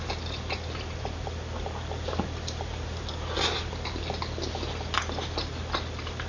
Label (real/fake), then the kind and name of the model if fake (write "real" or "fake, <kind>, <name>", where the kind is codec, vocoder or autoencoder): real